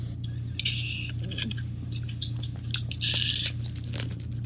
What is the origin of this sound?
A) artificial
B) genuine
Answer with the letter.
B